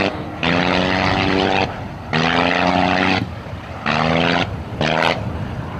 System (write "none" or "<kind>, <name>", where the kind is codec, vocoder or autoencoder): none